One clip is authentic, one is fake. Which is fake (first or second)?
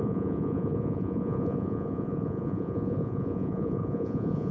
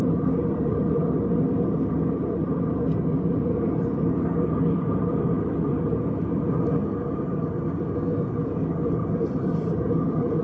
first